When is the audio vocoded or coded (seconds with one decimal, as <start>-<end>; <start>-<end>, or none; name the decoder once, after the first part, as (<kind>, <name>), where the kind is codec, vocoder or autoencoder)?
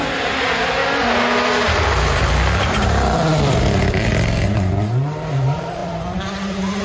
0.0-0.8 (vocoder, BigVGAN v2); 3.5-6.8